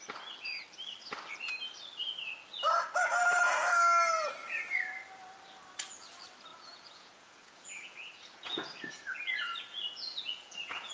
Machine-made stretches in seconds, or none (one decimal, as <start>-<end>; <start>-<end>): 6.5-10.9